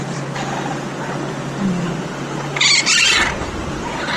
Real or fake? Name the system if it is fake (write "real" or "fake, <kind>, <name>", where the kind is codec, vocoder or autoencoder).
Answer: real